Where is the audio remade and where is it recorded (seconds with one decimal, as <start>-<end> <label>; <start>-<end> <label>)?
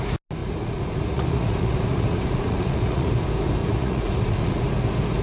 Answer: 0.0-0.4 recorded; 0.4-3.1 remade; 3.1-3.6 recorded; 3.6-4.6 remade; 4.6-5.2 recorded